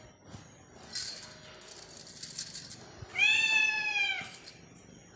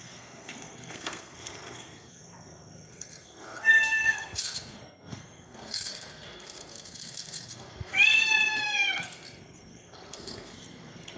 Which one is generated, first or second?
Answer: second